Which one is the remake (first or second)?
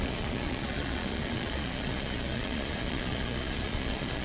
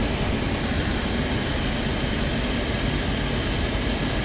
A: first